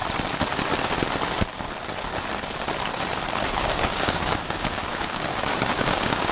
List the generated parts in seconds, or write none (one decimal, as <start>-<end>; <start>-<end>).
3.5-6.3